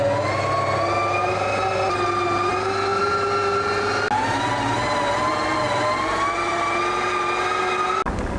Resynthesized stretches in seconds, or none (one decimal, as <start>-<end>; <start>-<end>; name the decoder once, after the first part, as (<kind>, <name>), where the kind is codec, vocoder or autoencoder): none